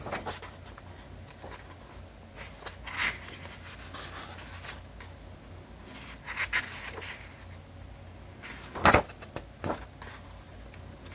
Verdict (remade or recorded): recorded